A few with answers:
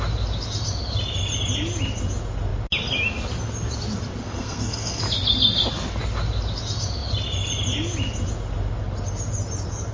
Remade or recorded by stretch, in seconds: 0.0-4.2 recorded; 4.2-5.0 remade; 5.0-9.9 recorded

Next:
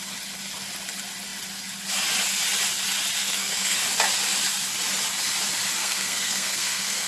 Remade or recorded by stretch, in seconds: 0.0-3.2 recorded; 3.2-3.8 remade; 3.8-5.8 recorded; 5.8-7.1 remade

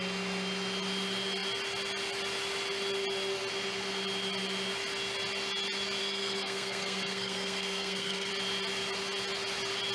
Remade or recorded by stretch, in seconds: 0.0-6.0 recorded; 6.0-8.3 remade; 8.3-9.9 recorded

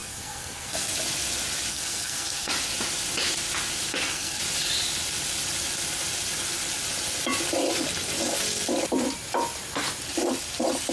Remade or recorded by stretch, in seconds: 0.0-0.9 remade; 0.9-1.7 recorded; 1.7-2.5 remade; 2.5-3.9 recorded; 3.9-4.4 remade; 4.4-10.9 recorded

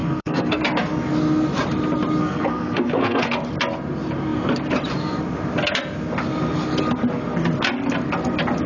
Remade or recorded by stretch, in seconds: 0.0-0.6 remade; 0.6-2.2 recorded; 2.2-3.2 remade; 3.2-8.7 recorded